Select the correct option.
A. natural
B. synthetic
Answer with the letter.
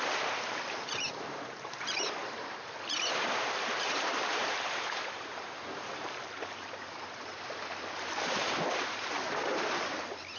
B